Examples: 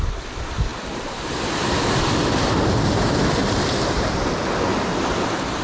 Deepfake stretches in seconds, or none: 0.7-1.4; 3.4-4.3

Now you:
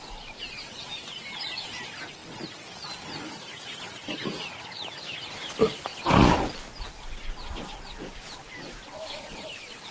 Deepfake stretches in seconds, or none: none

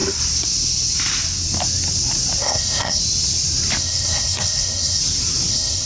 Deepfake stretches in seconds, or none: 2.4-3.0; 3.8-5.0; 5.5-5.9

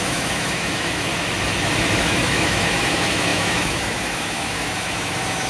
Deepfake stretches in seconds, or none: 0.0-1.1; 2.0-5.5